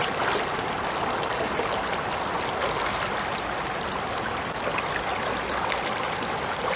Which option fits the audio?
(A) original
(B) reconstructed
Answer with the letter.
A